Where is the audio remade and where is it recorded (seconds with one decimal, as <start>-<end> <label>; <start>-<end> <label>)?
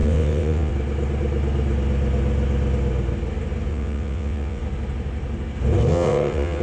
0.0-0.7 remade; 0.7-3.7 recorded; 3.7-4.6 remade; 4.6-5.9 recorded; 5.9-6.6 remade